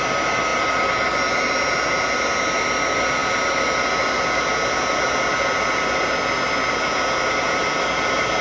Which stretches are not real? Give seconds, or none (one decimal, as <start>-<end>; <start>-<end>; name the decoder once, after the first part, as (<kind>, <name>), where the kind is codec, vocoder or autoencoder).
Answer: none